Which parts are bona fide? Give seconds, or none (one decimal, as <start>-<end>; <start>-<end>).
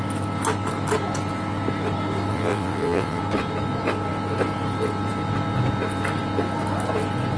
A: 0.0-2.3; 3.2-7.4